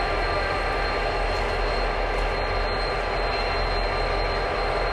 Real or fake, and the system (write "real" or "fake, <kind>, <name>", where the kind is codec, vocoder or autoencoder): real